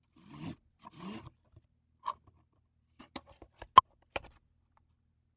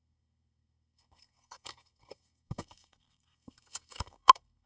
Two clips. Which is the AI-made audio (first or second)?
second